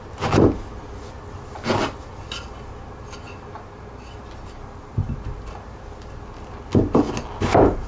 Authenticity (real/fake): real